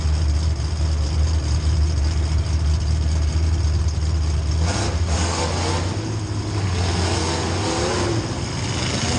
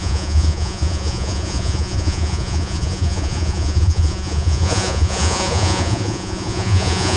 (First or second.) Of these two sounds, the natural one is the first